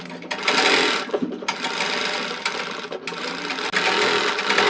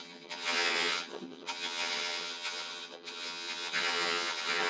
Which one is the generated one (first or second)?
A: second